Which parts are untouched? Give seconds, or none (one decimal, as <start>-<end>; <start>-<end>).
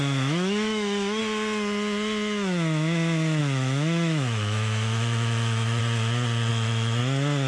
1.2-3.4; 5.8-6.5; 7.0-7.5